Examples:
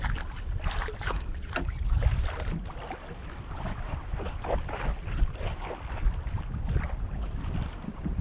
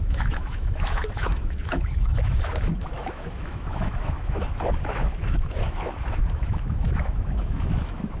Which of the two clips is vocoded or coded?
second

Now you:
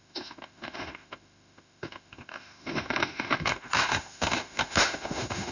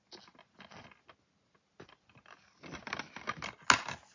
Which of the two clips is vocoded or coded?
first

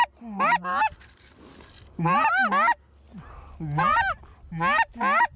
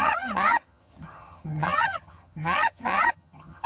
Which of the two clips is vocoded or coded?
second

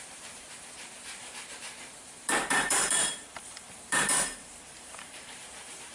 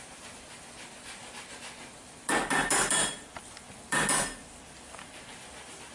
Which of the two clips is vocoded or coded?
first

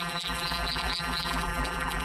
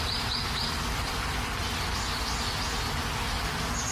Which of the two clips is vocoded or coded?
first